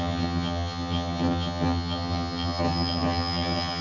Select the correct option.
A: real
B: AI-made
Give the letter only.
B